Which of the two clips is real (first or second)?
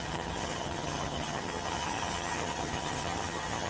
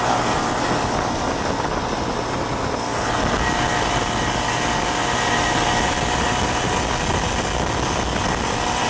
second